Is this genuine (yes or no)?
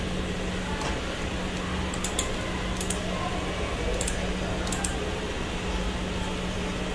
yes